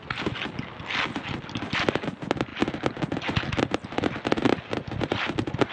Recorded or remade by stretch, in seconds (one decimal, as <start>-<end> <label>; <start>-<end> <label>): 0.0-5.7 recorded